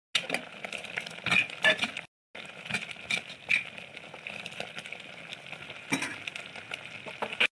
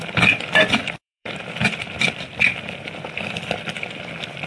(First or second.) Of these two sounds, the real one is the first